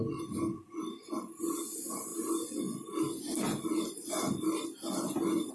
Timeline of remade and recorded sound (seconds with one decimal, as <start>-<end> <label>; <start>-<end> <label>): 0.0-5.5 recorded